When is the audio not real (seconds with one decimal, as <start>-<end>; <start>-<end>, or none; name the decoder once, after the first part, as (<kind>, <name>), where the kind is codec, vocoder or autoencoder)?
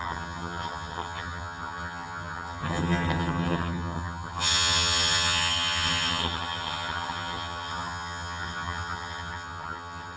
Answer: 0.0-10.2 (vocoder, HiFi-GAN)